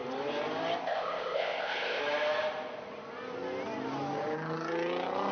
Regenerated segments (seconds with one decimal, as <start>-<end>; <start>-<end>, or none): 0.8-2.0